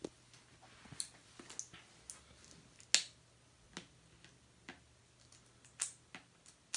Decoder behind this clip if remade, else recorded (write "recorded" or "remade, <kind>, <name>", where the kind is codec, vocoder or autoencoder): recorded